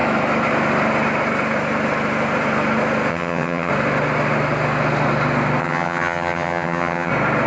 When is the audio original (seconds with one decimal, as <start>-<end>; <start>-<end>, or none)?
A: 0.0-3.1; 3.7-5.6; 7.1-7.5